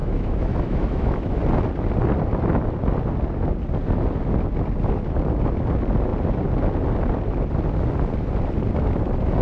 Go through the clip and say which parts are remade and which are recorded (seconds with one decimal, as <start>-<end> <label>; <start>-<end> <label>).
0.0-1.4 remade; 1.4-9.4 recorded